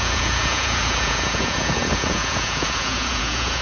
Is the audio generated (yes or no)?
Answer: yes